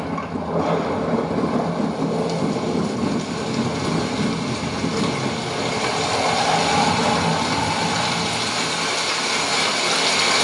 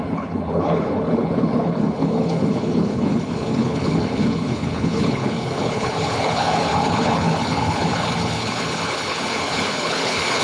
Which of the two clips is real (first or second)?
first